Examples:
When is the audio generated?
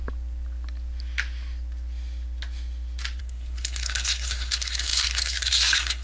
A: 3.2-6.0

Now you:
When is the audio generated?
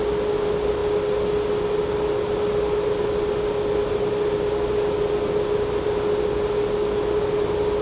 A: none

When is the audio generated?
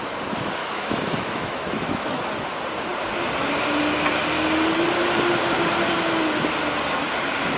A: 0.6-2.2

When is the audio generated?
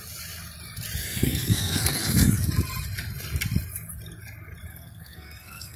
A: 1.0-2.5; 4.7-5.8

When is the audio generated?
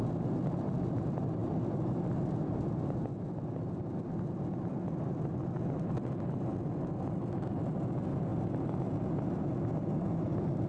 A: none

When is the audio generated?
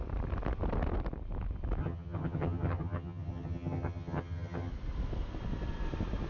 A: 1.8-4.7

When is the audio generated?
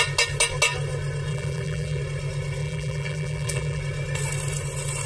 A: 1.3-2.0; 2.6-3.8